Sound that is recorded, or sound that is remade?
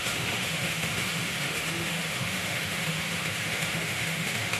remade